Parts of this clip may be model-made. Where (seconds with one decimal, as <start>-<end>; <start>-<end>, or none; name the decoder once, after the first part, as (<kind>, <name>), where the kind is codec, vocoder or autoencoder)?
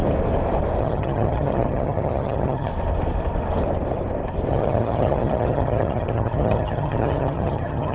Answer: 0.8-2.7 (vocoder, HiFi-GAN); 4.5-7.9